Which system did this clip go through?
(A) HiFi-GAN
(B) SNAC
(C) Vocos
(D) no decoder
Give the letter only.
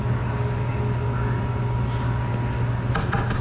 D